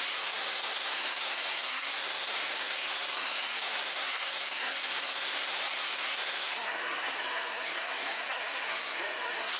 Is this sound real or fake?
fake